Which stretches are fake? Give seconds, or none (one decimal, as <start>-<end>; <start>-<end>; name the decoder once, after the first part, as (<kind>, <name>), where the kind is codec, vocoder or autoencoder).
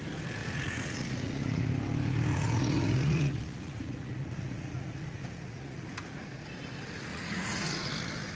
0.4-1.7 (vocoder, Vocos); 2.3-6.3; 7.1-7.9